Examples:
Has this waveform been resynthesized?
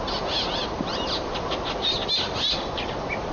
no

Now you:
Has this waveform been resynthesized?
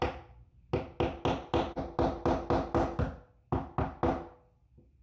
no